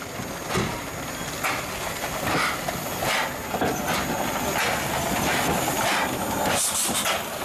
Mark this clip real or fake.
real